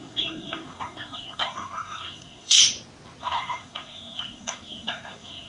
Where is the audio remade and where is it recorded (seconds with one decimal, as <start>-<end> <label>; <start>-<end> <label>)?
0.0-2.6 remade; 2.6-3.2 recorded; 3.2-5.5 remade

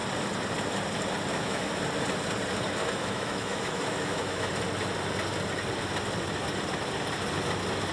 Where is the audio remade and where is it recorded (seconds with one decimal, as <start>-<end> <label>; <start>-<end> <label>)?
0.0-1.3 recorded; 1.3-1.8 remade; 1.8-2.8 recorded; 2.8-4.5 remade; 4.5-7.9 recorded

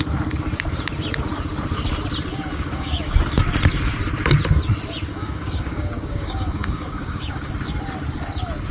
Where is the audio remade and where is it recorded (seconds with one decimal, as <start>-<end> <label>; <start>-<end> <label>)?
0.0-2.3 recorded; 2.3-3.2 remade; 3.2-5.1 recorded; 5.1-7.5 remade; 7.5-8.7 recorded